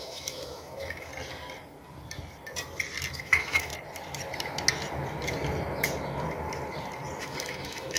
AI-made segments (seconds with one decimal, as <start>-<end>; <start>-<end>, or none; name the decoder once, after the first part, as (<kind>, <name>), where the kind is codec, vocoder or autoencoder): 0.0-1.1 (autoencoder, DAC-VAE); 3.2-3.7; 7.2-8.0